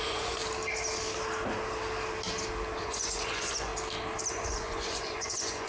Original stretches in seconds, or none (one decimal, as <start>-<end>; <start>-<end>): 0.4-2.8; 3.7-4.3